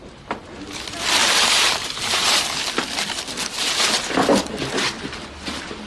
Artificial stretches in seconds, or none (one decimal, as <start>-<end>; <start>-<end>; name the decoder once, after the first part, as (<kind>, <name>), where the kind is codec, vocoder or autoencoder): 1.2-2.6 (vocoder, BigVGAN v2)